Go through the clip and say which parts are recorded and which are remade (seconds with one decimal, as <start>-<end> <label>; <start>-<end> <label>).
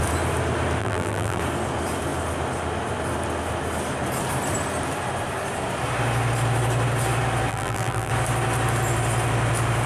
0.0-0.8 recorded; 0.8-1.4 remade; 1.4-7.5 recorded; 7.5-8.1 remade; 8.1-9.9 recorded